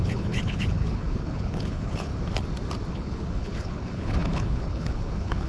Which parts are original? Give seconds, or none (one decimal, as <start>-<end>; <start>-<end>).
2.1-2.9